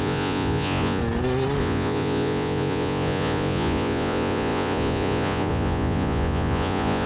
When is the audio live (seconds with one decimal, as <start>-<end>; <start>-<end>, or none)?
1.0-1.6